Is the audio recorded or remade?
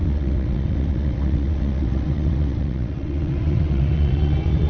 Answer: remade